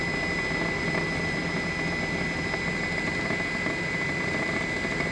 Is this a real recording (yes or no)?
yes